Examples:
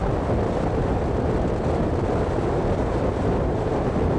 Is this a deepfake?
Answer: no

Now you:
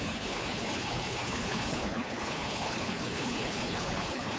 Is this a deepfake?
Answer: yes